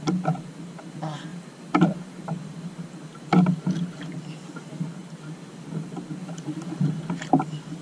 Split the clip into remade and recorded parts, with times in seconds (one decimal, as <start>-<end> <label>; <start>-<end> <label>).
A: 0.0-1.3 recorded; 1.3-2.7 remade; 2.7-5.0 recorded; 5.0-5.5 remade; 5.5-6.2 recorded; 6.2-6.8 remade; 6.8-7.8 recorded